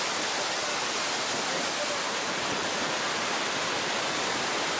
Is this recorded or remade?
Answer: recorded